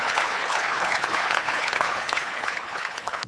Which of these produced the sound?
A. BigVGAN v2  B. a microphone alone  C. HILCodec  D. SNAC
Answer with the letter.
C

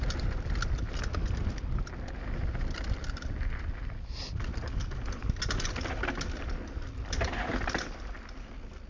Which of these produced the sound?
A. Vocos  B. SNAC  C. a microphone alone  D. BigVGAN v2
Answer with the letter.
C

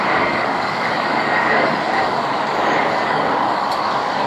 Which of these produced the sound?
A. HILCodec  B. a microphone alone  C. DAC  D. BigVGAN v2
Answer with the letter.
C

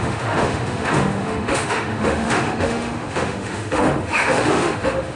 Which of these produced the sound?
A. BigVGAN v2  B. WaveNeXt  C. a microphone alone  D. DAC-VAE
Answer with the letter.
D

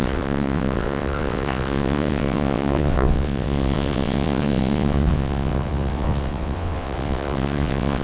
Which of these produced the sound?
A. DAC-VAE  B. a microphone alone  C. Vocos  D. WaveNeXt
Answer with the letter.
D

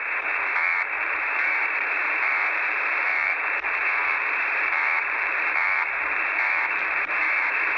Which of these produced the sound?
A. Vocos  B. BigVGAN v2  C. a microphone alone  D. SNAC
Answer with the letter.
B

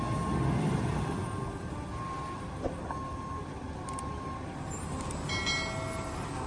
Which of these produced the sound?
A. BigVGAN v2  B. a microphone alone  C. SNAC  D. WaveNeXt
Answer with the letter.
B